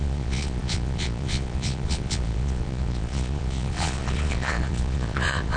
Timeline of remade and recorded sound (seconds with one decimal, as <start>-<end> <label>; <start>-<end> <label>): 0.0-5.6 remade